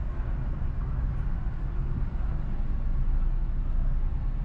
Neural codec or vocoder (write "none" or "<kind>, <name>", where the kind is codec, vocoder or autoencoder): none